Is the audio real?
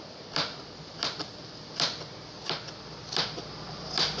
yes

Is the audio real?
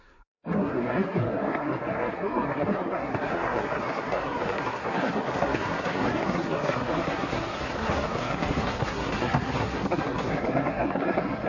no